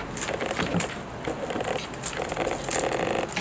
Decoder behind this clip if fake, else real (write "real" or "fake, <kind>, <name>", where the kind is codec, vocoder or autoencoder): real